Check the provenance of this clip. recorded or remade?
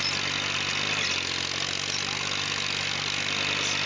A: recorded